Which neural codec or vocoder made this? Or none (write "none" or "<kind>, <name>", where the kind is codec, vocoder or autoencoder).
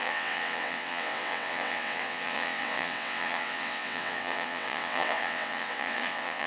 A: vocoder, WaveNeXt